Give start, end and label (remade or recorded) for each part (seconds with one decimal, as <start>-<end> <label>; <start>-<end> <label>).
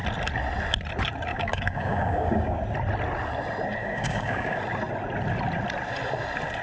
0.0-1.3 recorded; 1.3-2.6 remade; 2.6-3.8 recorded; 3.8-4.6 remade; 4.6-6.6 recorded